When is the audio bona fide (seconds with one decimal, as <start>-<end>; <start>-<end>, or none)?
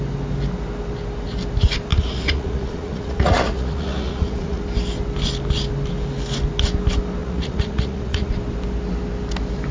0.0-1.9; 4.6-7.2; 8.3-9.7